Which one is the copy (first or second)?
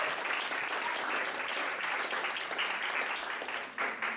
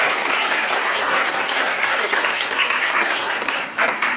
second